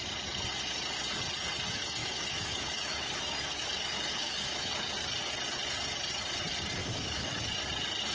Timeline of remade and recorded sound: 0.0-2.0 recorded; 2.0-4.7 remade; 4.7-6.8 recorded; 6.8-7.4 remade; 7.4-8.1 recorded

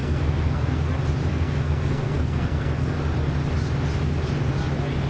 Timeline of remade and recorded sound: 0.0-0.9 remade; 0.9-1.3 recorded; 1.3-2.9 remade; 2.9-5.1 recorded

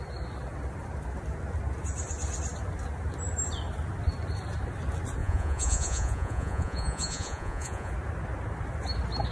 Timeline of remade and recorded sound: 0.0-5.2 recorded; 5.2-7.9 remade; 7.9-9.3 recorded

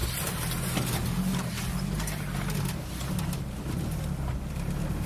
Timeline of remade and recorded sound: 0.0-5.1 recorded